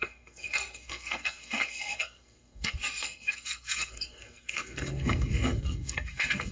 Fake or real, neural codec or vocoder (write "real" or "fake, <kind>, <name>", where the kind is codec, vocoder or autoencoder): fake, codec, SNAC